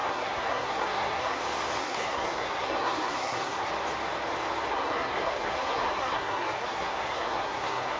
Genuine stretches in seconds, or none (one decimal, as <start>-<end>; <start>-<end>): 1.4-1.8; 3.7-4.7